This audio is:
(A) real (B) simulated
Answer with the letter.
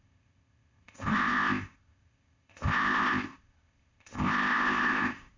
B